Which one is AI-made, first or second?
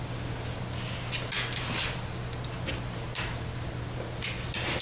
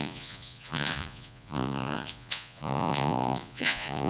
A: second